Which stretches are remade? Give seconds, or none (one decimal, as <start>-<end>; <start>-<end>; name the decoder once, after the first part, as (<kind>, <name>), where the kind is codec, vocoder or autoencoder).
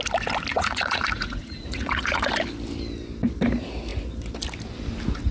0.5-2.3 (vocoder, Vocos)